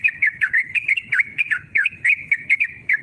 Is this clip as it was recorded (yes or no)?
no